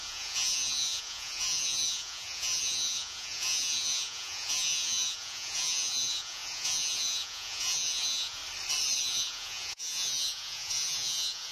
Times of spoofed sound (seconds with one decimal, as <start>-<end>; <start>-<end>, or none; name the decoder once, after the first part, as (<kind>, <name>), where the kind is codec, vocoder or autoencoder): 0.0-8.4 (vocoder, Vocos); 9.0-11.5